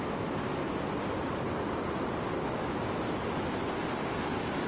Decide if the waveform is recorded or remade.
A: recorded